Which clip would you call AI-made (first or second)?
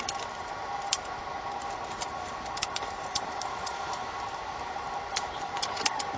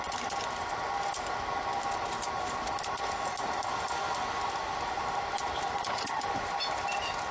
first